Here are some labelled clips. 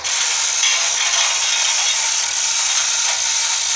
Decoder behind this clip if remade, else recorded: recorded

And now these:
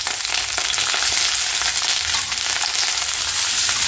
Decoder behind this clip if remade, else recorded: recorded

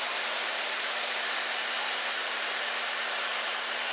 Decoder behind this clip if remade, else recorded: remade, vocoder, BigVGAN v2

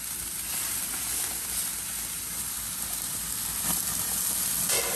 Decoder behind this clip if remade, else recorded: recorded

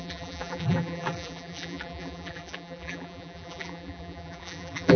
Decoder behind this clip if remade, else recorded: remade, vocoder, BigVGAN v2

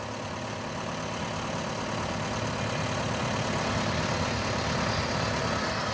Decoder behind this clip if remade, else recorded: recorded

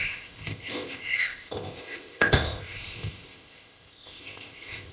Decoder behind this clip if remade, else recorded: remade, codec, ZipCodec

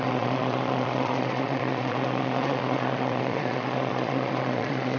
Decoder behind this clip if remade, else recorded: remade, vocoder, Vocos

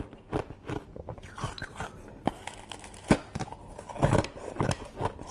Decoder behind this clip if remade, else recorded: recorded